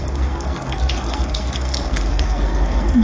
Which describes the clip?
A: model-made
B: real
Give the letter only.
A